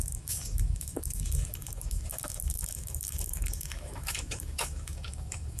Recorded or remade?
remade